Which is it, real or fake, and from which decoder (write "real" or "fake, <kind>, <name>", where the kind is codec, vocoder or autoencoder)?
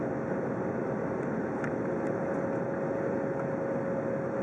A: real